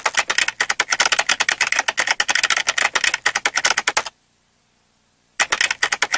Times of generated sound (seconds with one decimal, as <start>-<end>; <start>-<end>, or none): none